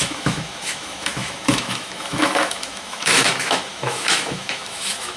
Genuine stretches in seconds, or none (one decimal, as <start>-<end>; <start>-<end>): none